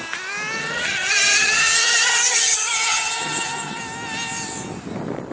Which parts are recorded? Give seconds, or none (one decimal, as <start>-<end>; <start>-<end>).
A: 0.0-0.6; 3.8-5.3